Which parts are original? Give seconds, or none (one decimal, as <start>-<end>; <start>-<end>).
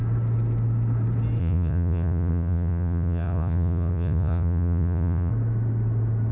0.0-1.4; 5.3-6.3